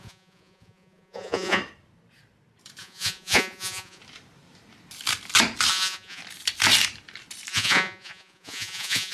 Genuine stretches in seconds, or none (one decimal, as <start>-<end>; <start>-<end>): 1.6-2.8; 4.0-5.7; 6.2-7.5